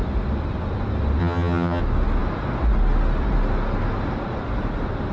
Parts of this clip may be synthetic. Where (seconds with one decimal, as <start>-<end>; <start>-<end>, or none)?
1.2-1.8